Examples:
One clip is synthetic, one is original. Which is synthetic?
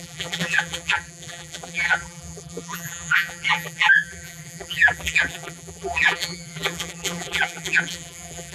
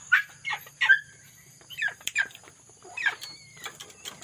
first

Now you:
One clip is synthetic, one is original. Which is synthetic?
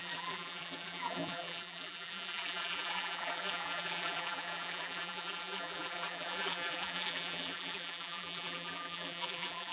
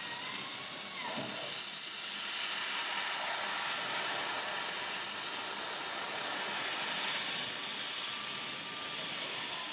first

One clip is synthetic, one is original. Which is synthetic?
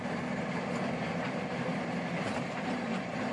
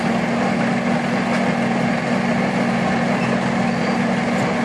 first